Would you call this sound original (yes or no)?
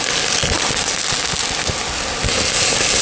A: yes